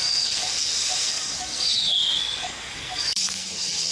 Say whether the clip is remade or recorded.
remade